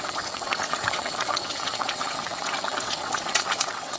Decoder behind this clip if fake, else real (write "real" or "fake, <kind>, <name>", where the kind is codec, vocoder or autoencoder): fake, vocoder, WaveNeXt